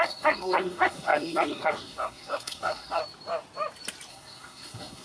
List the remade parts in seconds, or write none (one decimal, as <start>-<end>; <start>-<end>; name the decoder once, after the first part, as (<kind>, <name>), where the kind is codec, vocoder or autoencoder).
0.0-3.0 (codec, SNAC); 4.1-5.0